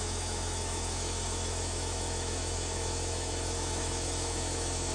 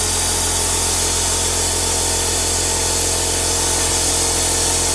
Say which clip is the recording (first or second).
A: second